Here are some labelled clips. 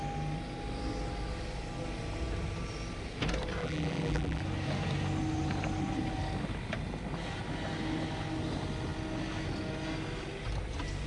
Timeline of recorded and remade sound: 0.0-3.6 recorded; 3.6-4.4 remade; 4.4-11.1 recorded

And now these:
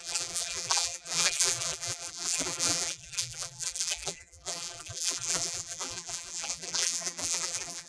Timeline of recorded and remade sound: 0.0-7.9 remade

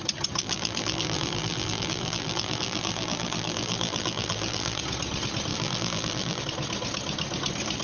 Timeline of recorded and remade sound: 0.0-0.4 recorded; 0.4-4.8 remade; 4.8-5.5 recorded; 5.5-6.4 remade; 6.4-7.8 recorded

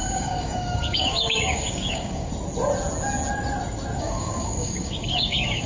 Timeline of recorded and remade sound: 0.0-2.3 remade; 2.3-4.0 recorded; 4.0-5.7 remade

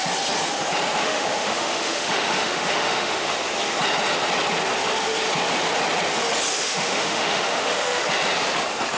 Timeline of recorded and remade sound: 0.0-1.0 recorded; 1.0-3.3 remade; 3.3-6.5 recorded; 6.5-8.0 remade; 8.0-9.0 recorded